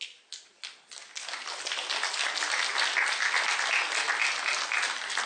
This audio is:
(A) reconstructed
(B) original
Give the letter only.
B